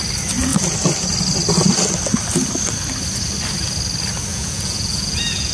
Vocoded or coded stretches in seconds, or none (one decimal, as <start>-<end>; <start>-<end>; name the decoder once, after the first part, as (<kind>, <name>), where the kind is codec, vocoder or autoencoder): 4.3-5.5 (vocoder, Vocos)